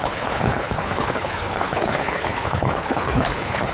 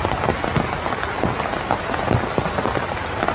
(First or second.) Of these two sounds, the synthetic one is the first